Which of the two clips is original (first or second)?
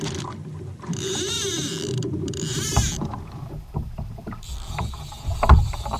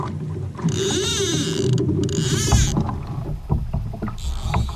second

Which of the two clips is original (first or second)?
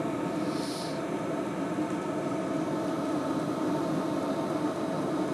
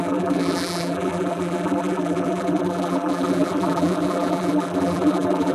first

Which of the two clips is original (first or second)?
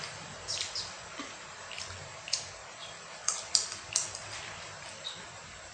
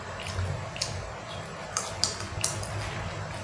second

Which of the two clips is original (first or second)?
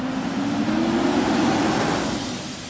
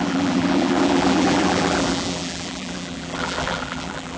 first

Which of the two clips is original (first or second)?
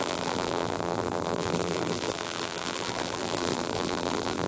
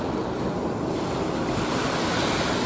second